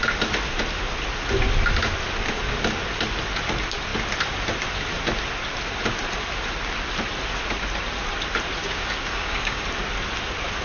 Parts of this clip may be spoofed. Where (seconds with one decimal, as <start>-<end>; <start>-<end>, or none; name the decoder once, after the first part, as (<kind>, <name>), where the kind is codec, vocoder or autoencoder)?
8.6-9.6 (codec, DAC)